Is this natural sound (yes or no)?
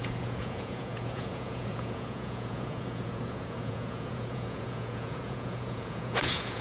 no